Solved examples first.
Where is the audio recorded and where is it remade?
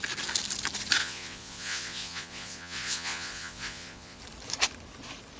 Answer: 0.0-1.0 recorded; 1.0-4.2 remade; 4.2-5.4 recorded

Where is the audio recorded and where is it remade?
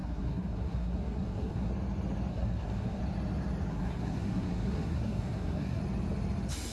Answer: 0.0-1.7 remade; 1.7-2.3 recorded; 2.3-3.0 remade; 3.0-3.7 recorded; 3.7-5.8 remade; 5.8-6.7 recorded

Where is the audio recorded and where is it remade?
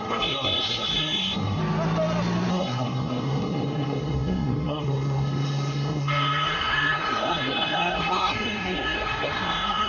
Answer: 0.0-1.6 remade; 1.6-2.5 recorded; 2.5-9.9 remade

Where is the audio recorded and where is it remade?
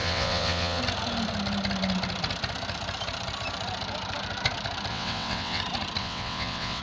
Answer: 0.0-0.8 remade; 0.8-4.9 recorded; 4.9-5.6 remade; 5.6-6.0 recorded; 6.0-6.8 remade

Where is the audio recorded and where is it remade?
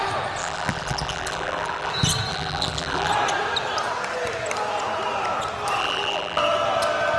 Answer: 0.0-0.4 recorded; 0.4-1.9 remade; 1.9-2.3 recorded; 2.3-3.1 remade; 3.1-5.8 recorded; 5.8-6.4 remade; 6.4-7.2 recorded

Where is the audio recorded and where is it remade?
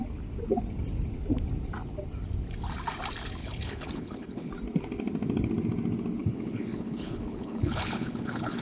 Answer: 0.0-3.4 recorded; 3.4-4.5 remade; 4.5-6.2 recorded; 6.2-8.6 remade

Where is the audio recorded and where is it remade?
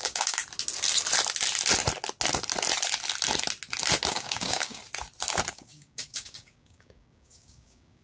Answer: 0.0-0.4 remade; 0.4-4.1 recorded; 4.1-4.8 remade; 4.8-5.5 recorded; 5.5-8.0 remade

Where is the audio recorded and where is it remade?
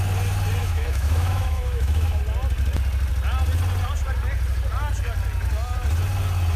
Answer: 0.0-0.6 recorded; 0.6-2.2 remade; 2.2-6.6 recorded